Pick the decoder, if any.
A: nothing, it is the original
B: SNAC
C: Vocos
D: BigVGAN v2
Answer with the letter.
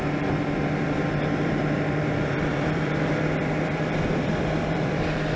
D